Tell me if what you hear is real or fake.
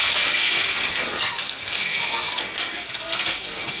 fake